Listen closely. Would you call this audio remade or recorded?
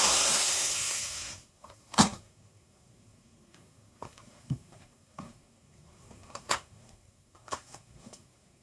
remade